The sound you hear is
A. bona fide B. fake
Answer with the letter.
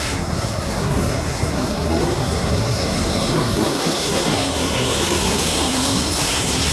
B